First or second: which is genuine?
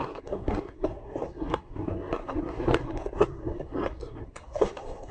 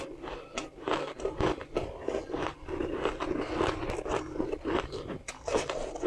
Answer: second